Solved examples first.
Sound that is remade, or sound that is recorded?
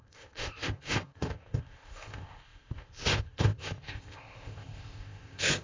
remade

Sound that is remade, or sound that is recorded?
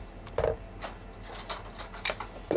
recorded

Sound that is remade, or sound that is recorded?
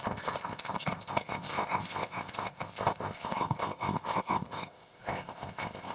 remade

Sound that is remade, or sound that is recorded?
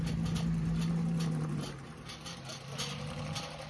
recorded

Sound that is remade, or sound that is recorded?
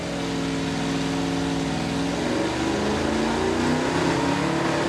recorded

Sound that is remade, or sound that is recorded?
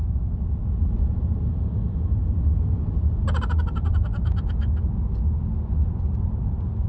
recorded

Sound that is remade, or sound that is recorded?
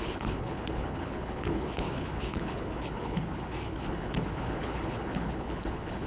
remade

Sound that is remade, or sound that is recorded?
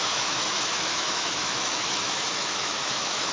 remade